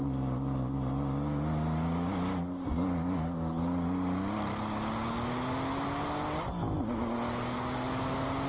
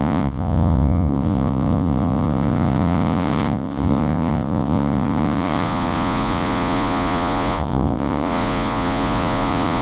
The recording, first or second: first